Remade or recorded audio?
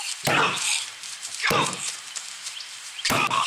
recorded